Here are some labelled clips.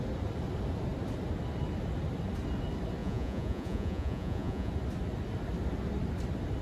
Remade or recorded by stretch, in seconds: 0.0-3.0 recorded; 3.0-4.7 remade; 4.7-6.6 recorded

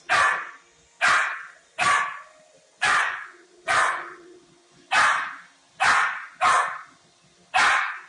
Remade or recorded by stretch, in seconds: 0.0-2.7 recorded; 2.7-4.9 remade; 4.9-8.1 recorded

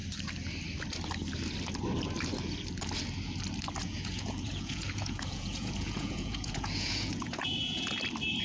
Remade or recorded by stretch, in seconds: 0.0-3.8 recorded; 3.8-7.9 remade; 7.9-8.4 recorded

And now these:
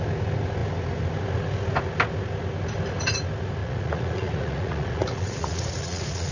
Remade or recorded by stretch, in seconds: 0.0-3.6 recorded; 3.6-6.3 remade